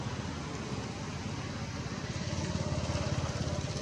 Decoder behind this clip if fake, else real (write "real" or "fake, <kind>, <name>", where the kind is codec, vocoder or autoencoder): fake, vocoder, BigVGAN v2